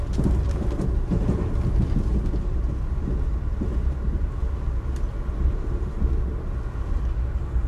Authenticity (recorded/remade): recorded